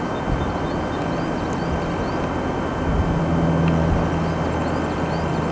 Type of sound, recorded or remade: recorded